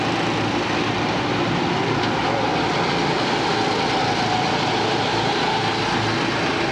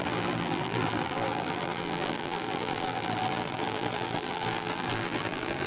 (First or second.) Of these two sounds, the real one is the first